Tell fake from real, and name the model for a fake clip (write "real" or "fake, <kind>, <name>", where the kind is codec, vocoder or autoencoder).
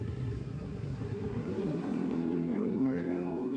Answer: fake, codec, SNAC